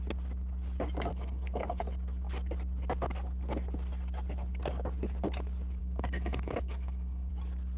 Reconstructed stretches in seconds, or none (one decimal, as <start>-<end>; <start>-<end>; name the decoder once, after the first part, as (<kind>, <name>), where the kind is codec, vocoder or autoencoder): 1.1-1.8 (codec, SNAC); 5.8-7.3

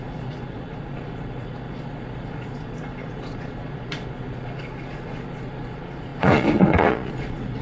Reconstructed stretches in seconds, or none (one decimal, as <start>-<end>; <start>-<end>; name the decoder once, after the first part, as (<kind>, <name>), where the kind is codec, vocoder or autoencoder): 0.0-7.6 (vocoder, Vocos)

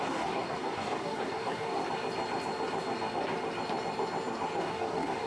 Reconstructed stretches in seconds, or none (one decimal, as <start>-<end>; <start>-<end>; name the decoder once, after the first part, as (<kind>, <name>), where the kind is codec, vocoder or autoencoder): 0.0-1.8 (codec, DAC); 4.6-5.3

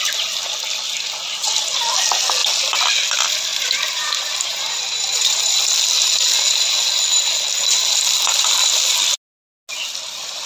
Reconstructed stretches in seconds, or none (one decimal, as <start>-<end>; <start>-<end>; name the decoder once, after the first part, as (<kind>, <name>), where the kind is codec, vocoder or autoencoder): 3.5-5.4 (vocoder, BigVGAN v2)